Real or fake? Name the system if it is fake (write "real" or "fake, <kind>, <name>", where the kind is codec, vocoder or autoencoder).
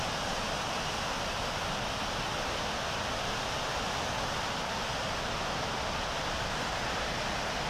real